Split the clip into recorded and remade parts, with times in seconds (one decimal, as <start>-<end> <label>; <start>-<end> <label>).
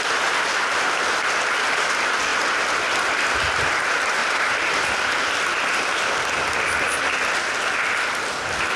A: 0.0-4.2 recorded; 4.2-7.8 remade; 7.8-8.8 recorded